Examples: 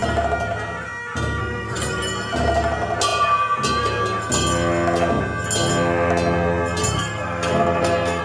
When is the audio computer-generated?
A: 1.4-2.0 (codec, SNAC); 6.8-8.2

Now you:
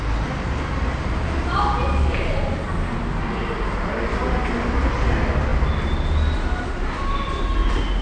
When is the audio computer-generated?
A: none

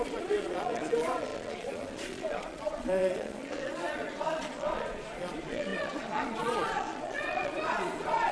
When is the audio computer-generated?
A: 0.0-8.3 (vocoder, Vocos)

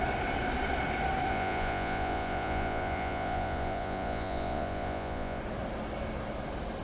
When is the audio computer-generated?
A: 1.3-5.4 (vocoder, Vocos)

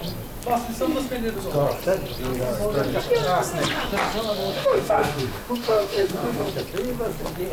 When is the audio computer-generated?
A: 4.5-6.5 (autoencoder, DAC-VAE)

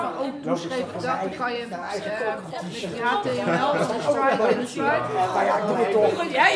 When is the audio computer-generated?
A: none